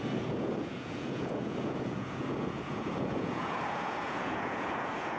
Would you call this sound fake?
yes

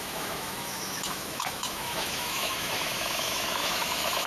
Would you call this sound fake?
yes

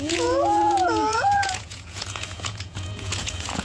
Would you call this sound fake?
yes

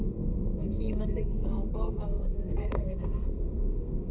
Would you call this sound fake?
yes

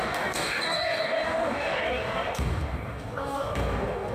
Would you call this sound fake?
yes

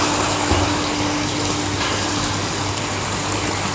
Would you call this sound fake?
no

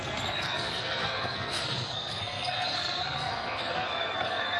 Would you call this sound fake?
yes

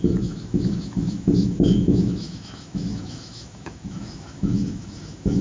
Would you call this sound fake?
yes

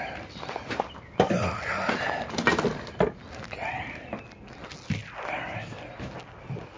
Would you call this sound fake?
no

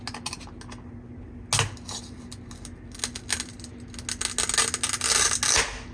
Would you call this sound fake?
no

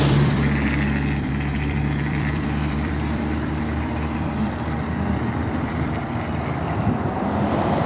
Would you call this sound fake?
yes